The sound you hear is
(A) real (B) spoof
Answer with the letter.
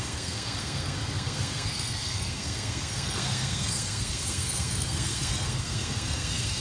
B